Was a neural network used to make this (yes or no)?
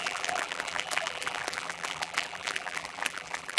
yes